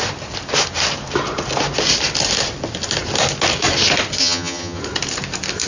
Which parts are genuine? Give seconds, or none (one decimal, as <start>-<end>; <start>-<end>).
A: 0.0-4.2; 4.8-5.7